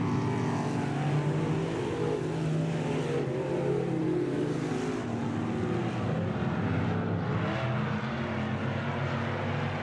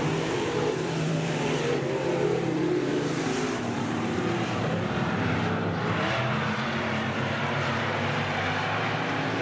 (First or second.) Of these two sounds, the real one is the first